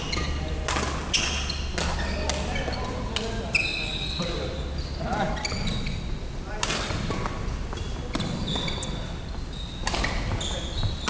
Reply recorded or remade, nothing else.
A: recorded